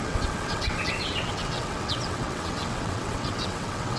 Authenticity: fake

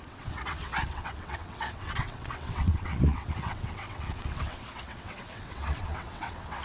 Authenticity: fake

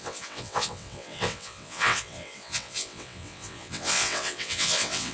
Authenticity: fake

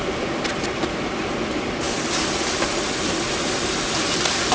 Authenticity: real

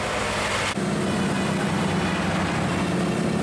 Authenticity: real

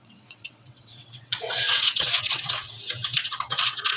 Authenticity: fake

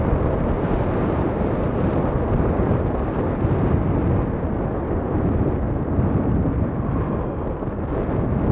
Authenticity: real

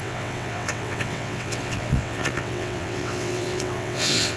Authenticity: fake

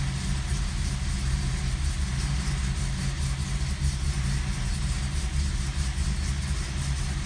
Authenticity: real